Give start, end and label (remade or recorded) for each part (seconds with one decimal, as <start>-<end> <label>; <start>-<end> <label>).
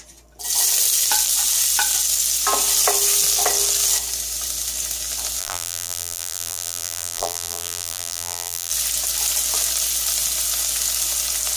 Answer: 0.0-5.4 recorded; 5.4-8.7 remade; 8.7-11.6 recorded